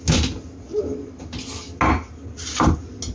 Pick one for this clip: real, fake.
real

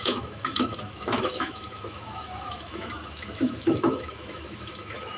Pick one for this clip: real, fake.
fake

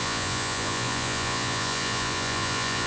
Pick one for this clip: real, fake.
fake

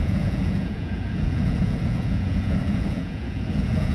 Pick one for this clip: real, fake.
fake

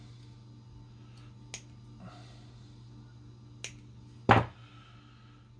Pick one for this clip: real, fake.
real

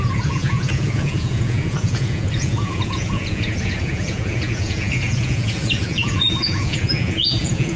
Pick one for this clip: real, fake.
fake